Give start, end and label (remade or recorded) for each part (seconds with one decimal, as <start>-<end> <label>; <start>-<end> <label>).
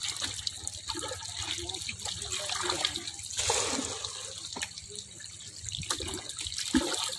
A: 0.0-7.2 recorded